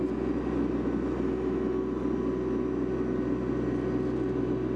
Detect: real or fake real